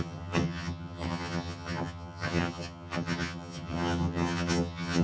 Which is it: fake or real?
fake